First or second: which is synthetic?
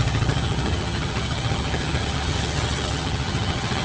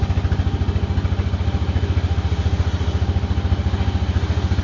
first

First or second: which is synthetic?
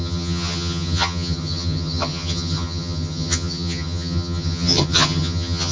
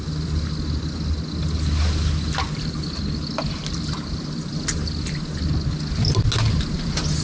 first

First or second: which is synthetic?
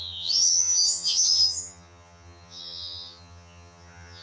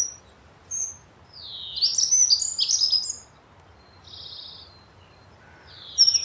first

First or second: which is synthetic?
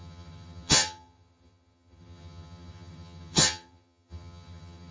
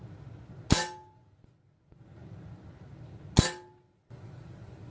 first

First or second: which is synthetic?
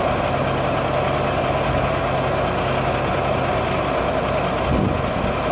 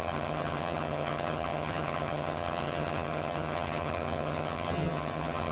second